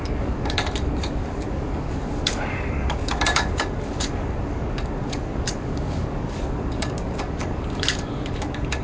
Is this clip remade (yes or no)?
yes